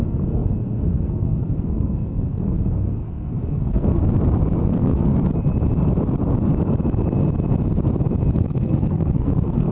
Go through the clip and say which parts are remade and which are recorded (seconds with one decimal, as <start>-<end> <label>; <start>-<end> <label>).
0.0-4.0 remade; 4.0-4.6 recorded; 4.6-5.1 remade; 5.1-8.4 recorded; 8.4-9.7 remade